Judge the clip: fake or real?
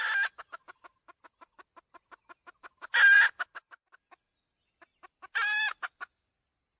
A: real